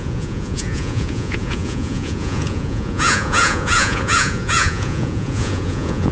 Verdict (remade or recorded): remade